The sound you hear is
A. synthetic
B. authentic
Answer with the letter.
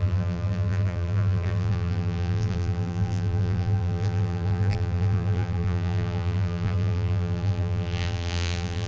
A